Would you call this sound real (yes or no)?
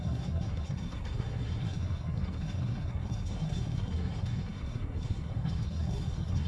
no